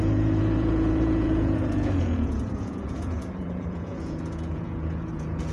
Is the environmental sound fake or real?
fake